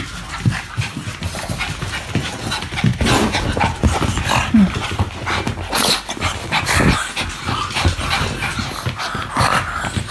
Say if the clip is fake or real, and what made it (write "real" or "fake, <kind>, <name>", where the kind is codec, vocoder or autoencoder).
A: real